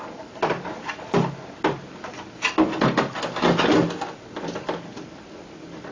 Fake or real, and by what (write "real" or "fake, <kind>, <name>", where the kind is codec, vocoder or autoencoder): real